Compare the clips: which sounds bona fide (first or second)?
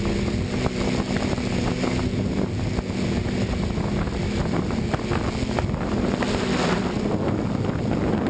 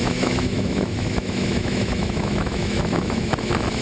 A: first